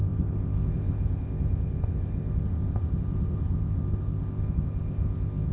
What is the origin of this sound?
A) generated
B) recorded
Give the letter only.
A